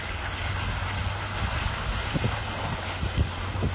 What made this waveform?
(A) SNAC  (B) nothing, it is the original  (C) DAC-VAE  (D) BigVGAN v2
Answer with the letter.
B